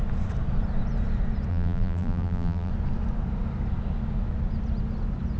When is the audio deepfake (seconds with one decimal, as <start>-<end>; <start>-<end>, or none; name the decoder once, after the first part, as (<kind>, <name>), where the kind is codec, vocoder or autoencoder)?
1.5-2.7 (vocoder, BigVGAN v2)